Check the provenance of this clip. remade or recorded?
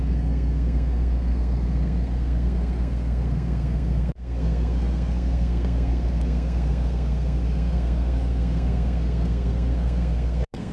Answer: remade